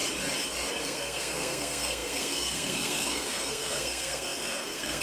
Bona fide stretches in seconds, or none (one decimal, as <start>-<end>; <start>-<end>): 0.0-0.8